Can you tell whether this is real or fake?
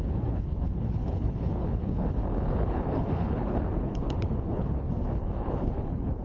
fake